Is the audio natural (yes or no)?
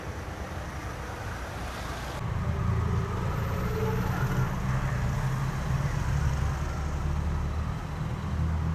yes